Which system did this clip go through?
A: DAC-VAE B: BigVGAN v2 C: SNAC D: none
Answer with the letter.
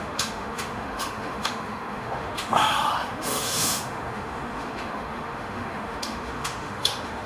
A